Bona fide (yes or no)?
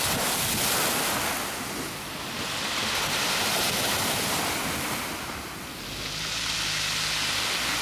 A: yes